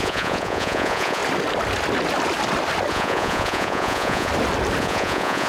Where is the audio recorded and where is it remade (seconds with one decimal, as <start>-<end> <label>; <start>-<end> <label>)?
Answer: 0.0-1.2 remade; 1.2-2.9 recorded; 2.9-4.3 remade; 4.3-4.8 recorded; 4.8-5.5 remade